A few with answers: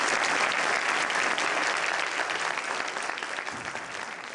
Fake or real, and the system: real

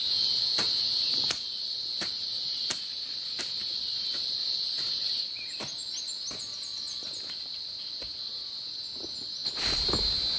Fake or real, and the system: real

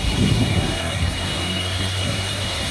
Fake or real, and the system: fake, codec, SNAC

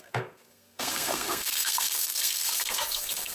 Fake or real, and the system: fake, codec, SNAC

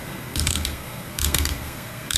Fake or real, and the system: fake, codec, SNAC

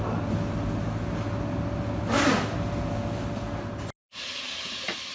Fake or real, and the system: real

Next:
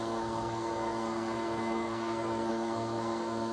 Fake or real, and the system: fake, codec, SNAC